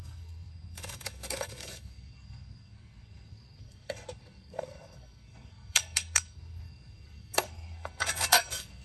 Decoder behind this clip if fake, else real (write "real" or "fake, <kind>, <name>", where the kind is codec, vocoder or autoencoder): fake, codec, SNAC